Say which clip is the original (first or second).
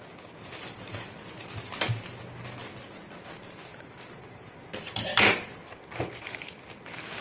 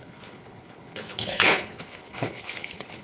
first